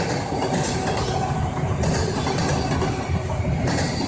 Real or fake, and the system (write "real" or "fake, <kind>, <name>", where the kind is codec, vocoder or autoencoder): real